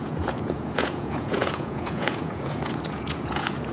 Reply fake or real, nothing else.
fake